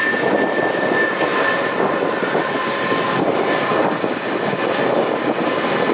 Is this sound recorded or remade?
recorded